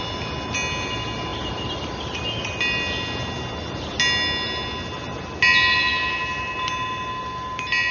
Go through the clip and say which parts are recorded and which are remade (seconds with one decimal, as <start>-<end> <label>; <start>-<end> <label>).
0.0-7.9 recorded